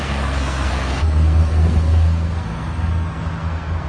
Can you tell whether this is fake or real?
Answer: fake